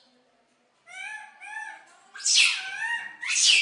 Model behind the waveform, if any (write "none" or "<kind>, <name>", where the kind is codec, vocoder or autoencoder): none